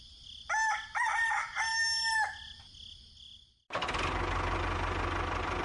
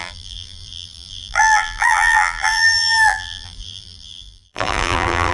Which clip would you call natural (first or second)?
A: first